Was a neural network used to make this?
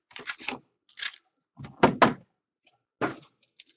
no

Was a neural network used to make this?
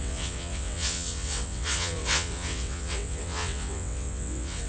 yes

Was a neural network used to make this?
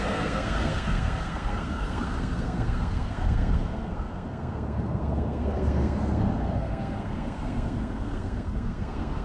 yes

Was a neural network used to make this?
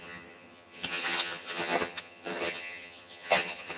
yes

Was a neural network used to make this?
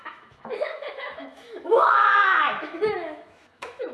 yes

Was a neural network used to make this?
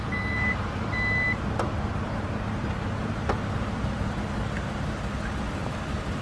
no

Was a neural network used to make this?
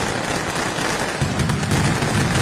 no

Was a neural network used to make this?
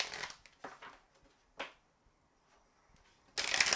no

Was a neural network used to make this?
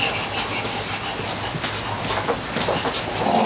no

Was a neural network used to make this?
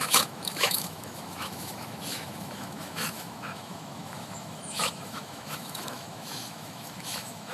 yes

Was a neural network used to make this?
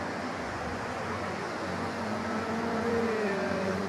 yes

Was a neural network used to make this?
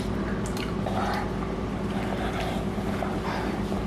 no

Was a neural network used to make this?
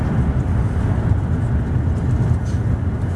no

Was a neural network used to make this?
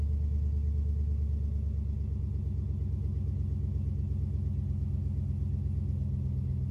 no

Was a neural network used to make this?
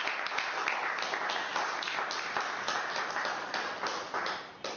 no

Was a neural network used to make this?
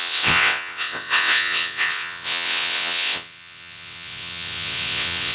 yes